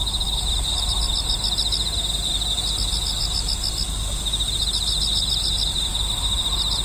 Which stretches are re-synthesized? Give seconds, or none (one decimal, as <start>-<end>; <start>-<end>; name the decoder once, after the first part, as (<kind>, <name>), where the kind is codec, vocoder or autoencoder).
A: none

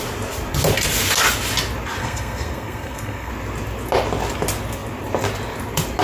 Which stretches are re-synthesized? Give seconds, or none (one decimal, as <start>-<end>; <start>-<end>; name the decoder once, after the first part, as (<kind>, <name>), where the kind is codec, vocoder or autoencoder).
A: 2.0-3.3 (codec, SNAC)